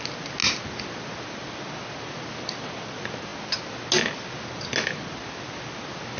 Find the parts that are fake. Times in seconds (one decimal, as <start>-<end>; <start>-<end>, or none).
none